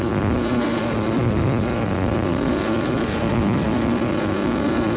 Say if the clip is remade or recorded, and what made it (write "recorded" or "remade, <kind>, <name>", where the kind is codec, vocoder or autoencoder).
recorded